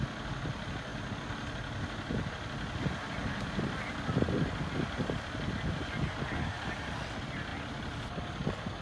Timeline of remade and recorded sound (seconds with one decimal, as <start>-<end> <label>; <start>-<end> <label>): 0.0-8.8 recorded